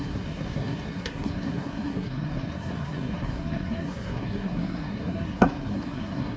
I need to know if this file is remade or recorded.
remade